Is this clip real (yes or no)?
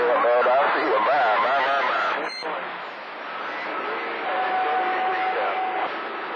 yes